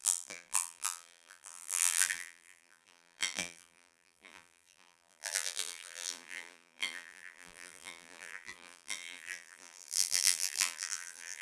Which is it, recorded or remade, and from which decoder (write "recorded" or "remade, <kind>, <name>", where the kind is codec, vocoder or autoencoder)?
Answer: remade, vocoder, BigVGAN v2